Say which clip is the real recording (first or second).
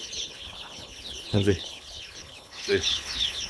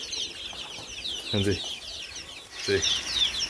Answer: second